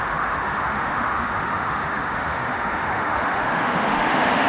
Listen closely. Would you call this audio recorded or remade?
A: remade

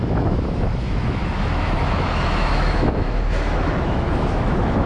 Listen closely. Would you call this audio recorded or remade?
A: remade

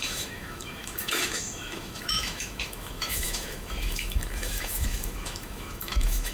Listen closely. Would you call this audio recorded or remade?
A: remade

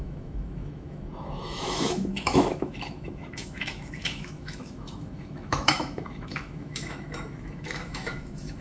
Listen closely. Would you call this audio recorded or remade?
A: remade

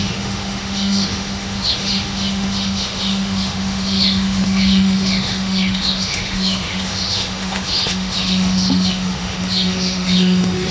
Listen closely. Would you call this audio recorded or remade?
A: remade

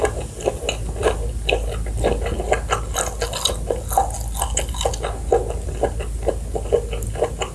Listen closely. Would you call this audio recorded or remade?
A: recorded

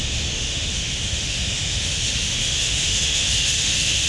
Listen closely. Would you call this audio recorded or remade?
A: remade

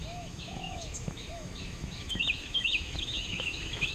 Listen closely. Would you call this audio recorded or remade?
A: remade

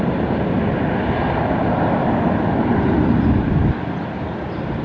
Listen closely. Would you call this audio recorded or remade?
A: recorded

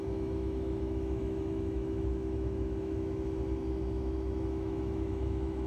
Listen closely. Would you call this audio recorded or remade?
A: remade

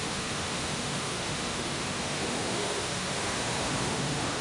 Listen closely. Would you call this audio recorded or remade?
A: remade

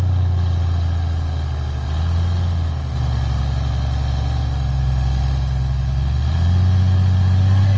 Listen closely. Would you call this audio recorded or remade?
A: recorded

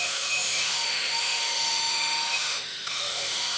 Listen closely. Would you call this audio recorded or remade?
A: remade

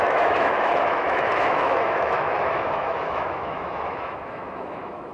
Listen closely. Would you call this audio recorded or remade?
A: remade